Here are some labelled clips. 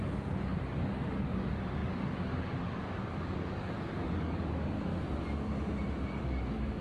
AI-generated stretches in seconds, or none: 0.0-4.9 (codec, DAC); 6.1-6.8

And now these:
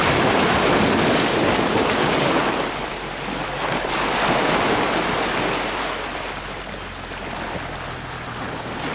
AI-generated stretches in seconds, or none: 1.8-2.5 (codec, DAC)